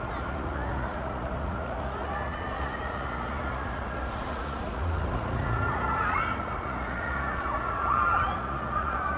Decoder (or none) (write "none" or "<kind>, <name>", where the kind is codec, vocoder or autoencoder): vocoder, Vocos